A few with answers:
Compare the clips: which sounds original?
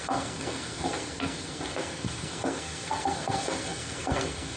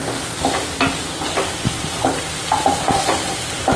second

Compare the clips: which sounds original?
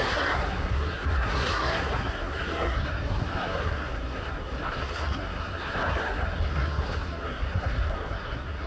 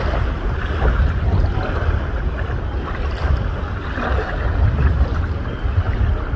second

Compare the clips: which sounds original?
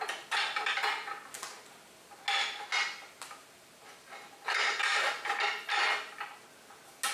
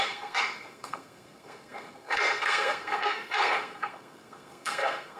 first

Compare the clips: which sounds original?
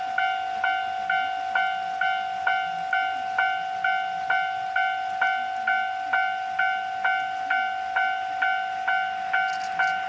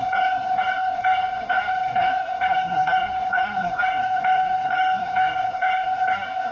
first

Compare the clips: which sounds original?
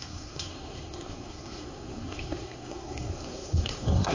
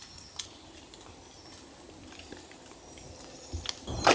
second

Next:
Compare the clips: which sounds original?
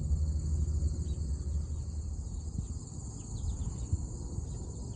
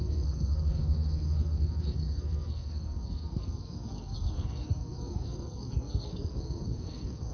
first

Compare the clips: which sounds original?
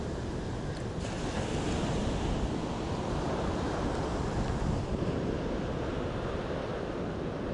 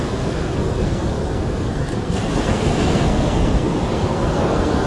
first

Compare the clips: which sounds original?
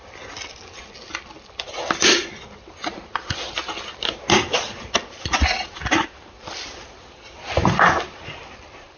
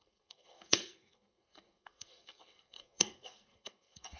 first